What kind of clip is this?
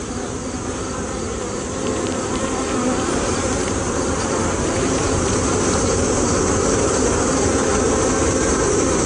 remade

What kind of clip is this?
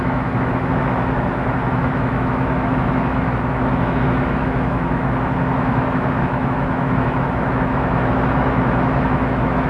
remade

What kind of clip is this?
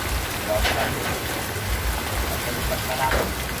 recorded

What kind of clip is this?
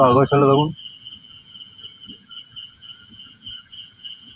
remade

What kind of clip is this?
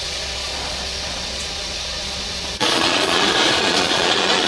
remade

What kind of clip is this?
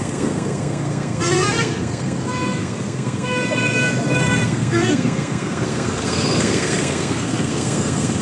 remade